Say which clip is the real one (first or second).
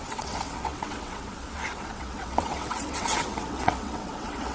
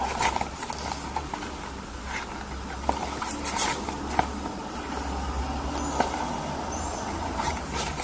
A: second